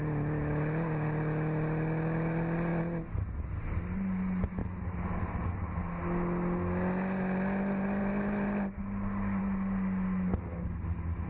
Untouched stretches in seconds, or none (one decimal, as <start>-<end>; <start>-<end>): 0.0-11.3